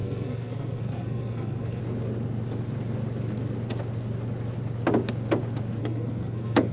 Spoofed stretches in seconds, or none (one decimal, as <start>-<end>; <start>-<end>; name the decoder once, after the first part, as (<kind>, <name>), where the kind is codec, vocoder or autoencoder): 0.0-1.8 (codec, SNAC); 5.8-6.7